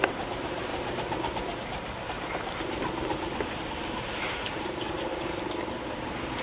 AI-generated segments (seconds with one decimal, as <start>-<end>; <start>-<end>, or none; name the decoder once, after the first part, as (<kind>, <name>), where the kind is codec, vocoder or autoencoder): 0.0-0.7 (vocoder, BigVGAN v2); 4.5-5.1; 5.8-6.4